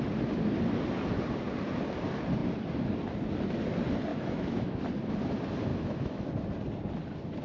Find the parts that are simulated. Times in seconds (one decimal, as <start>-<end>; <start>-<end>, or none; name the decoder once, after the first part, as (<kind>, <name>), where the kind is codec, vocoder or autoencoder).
4.1-4.8 (autoencoder, DAC-VAE); 5.7-6.3